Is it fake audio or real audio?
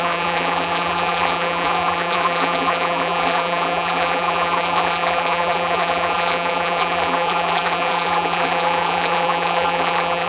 fake